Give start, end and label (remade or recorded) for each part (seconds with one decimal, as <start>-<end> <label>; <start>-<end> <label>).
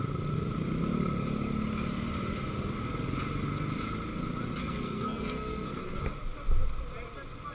0.0-4.6 recorded; 4.6-6.0 remade; 6.0-7.5 recorded